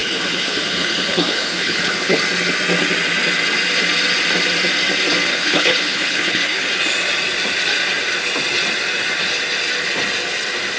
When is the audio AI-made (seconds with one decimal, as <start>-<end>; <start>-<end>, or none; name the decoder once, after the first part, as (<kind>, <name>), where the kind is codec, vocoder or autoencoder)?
0.0-2.2 (codec, HILCodec); 5.3-6.7

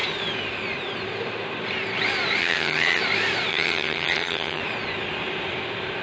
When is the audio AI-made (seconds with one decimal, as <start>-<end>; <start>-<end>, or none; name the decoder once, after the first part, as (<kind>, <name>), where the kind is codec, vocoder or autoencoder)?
2.4-3.0 (vocoder, HiFi-GAN); 3.5-4.6

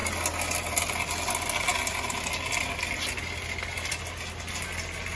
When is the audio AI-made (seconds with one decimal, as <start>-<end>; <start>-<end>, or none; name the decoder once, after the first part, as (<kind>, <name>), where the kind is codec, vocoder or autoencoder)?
none

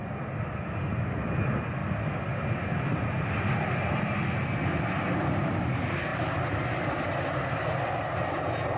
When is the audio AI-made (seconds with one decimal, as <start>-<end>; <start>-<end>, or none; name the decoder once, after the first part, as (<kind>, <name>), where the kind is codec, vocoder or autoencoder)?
none

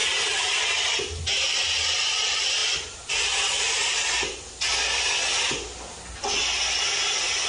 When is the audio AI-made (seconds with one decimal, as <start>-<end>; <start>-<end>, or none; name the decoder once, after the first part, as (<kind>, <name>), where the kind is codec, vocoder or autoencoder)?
none

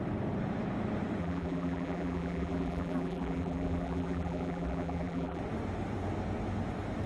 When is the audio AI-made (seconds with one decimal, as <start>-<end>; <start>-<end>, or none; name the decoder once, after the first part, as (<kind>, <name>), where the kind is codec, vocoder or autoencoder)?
1.2-5.4 (vocoder, BigVGAN v2)

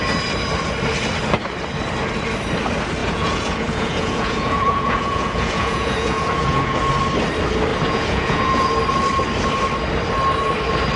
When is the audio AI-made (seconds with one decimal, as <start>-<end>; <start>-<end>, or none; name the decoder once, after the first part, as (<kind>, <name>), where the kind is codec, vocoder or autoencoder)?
3.0-6.9 (vocoder, Vocos); 7.7-8.7

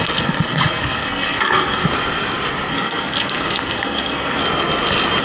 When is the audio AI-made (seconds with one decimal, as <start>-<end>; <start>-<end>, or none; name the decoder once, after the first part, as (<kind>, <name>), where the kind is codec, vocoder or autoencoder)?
0.0-1.8 (codec, SNAC); 2.7-4.4